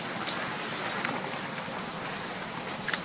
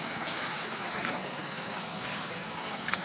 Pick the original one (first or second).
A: first